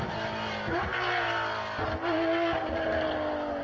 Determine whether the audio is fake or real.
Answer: real